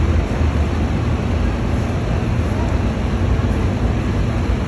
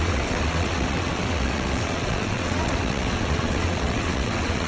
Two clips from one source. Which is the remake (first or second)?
second